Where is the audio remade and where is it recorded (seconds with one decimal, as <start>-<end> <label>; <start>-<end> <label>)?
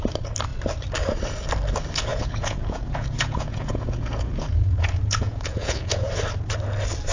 0.0-2.1 recorded; 2.1-6.1 remade; 6.1-7.1 recorded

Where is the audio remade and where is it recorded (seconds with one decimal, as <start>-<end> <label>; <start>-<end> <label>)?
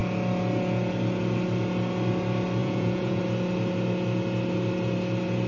0.0-2.6 recorded; 2.6-3.2 remade; 3.2-5.5 recorded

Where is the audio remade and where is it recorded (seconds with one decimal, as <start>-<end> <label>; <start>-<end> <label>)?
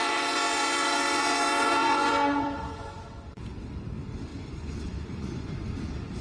0.0-3.4 remade; 3.4-4.3 recorded; 4.3-5.8 remade; 5.8-6.2 recorded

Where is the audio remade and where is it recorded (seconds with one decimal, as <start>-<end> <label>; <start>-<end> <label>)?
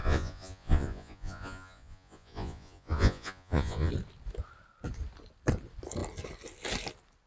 0.0-3.9 remade; 3.9-7.3 recorded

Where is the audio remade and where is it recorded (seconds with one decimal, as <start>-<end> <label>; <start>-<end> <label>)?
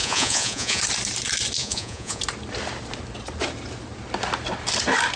0.0-0.8 remade; 0.8-1.6 recorded; 1.6-2.2 remade; 2.2-5.2 recorded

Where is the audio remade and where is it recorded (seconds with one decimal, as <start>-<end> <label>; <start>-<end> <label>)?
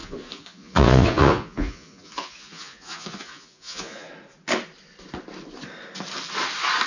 0.0-4.1 remade; 4.1-6.9 recorded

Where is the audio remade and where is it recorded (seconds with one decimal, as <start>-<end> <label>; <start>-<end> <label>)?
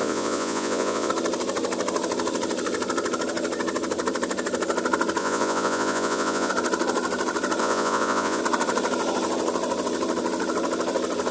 0.0-1.1 remade; 1.1-5.2 recorded; 5.2-6.5 remade; 6.5-7.6 recorded; 7.6-8.4 remade; 8.4-11.3 recorded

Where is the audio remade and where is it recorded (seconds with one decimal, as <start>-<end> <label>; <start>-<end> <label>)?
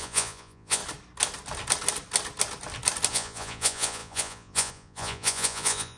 0.0-0.8 remade; 0.8-3.1 recorded; 3.1-6.0 remade